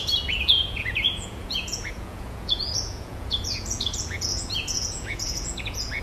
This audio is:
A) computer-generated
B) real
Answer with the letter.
A